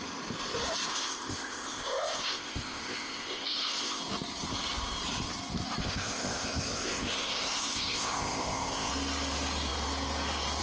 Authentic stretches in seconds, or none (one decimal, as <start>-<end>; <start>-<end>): 0.0-0.9; 4.0-5.8; 8.9-10.6